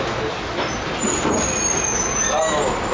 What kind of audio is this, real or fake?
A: real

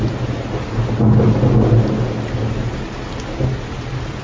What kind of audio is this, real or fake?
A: real